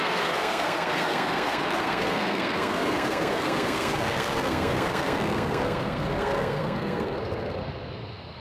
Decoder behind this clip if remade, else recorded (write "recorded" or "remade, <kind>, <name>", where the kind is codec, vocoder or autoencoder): remade, codec, SNAC